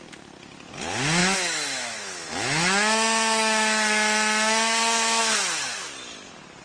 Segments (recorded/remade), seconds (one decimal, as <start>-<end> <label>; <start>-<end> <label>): 0.0-1.2 recorded; 1.2-5.2 remade; 5.2-6.6 recorded